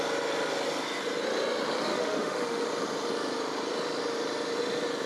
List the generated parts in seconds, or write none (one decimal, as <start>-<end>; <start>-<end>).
1.9-2.6